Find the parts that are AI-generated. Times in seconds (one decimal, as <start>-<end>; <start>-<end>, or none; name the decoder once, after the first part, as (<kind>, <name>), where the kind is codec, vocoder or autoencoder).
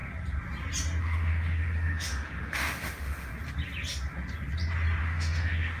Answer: 1.0-3.3 (autoencoder, DAC-VAE); 5.0-5.8